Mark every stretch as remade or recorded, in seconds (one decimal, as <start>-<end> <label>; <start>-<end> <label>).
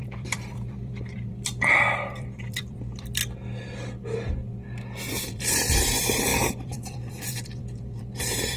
0.0-3.2 remade; 3.2-5.1 recorded; 5.1-8.6 remade